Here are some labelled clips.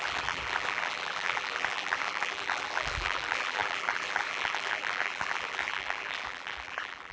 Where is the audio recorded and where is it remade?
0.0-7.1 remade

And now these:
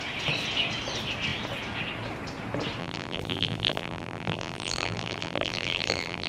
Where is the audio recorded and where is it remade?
0.0-2.8 recorded; 2.8-6.3 remade